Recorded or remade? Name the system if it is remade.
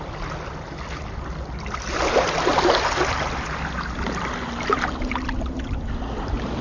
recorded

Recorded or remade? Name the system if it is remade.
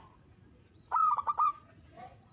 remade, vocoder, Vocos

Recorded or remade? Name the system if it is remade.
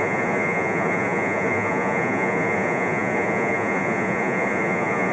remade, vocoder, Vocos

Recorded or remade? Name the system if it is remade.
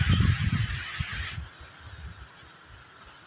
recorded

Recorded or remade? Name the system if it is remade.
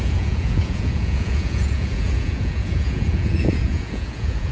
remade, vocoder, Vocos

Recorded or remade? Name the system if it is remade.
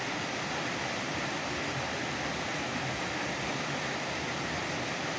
recorded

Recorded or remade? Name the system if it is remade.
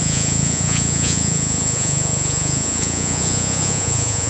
remade, vocoder, Vocos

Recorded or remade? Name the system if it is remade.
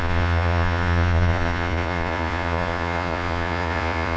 remade, vocoder, Vocos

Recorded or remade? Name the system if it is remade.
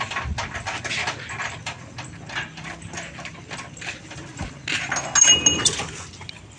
recorded